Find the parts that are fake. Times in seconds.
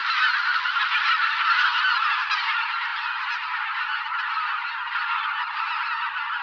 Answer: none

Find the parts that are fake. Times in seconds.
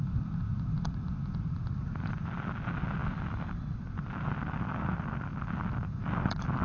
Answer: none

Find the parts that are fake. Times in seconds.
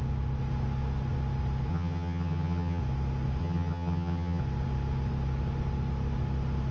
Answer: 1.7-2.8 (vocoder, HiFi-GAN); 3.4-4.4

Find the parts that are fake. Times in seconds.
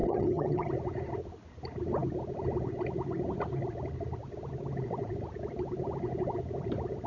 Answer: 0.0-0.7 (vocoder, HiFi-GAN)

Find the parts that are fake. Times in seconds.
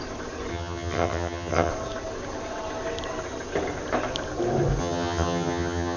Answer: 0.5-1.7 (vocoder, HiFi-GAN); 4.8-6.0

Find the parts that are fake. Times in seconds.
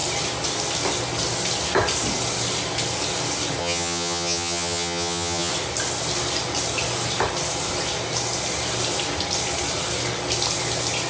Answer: 3.6-5.5 (vocoder, HiFi-GAN)